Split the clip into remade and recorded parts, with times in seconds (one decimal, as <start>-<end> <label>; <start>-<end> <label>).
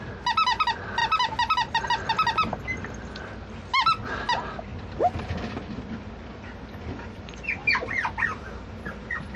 0.0-9.4 recorded